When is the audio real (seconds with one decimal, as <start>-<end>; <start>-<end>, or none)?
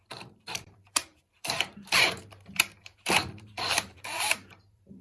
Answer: none